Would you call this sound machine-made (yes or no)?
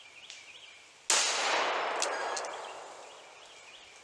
no